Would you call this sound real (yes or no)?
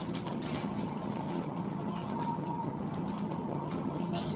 no